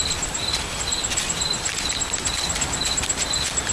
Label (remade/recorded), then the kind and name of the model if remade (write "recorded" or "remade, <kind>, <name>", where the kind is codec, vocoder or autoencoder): remade, vocoder, BigVGAN v2